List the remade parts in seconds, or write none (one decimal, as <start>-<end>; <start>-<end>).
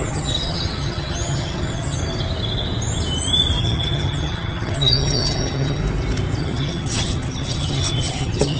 0.0-2.0; 3.6-5.8; 6.4-8.6